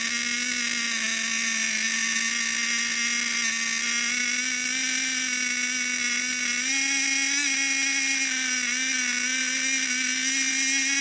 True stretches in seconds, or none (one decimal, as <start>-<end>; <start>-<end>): 0.0-11.0